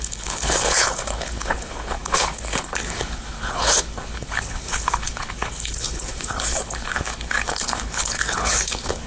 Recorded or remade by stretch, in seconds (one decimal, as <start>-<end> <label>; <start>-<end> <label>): 0.0-9.1 remade